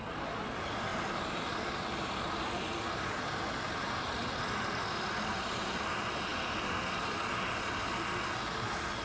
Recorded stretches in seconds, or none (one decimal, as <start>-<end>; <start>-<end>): 0.0-9.0